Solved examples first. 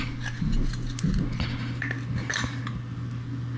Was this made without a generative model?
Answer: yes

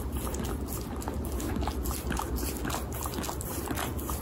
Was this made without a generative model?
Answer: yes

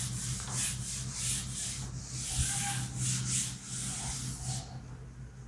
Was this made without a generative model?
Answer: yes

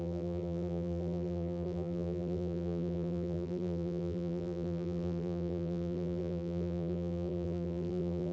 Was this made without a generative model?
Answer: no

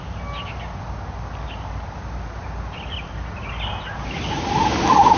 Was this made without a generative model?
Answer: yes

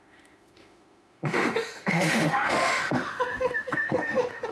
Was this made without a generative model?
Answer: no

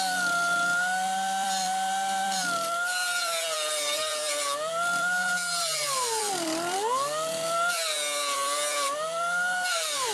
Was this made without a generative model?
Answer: no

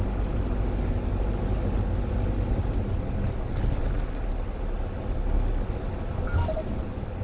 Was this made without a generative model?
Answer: yes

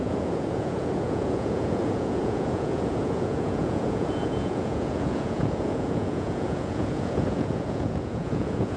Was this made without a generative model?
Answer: no